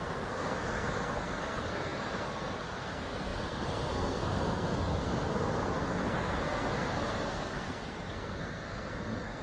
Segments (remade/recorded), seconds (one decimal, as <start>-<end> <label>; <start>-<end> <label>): 0.0-9.4 remade